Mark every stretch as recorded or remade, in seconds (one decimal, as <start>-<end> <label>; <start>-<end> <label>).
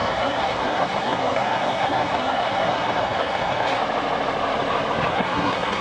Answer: 0.0-3.8 remade; 3.8-5.1 recorded; 5.1-5.8 remade